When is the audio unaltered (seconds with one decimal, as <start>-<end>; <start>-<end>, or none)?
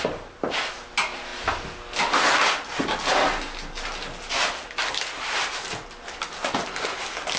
0.0-7.4